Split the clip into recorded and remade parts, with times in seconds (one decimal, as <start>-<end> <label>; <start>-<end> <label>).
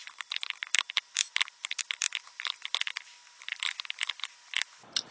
0.0-2.0 remade; 2.0-5.1 recorded